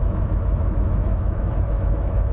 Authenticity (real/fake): fake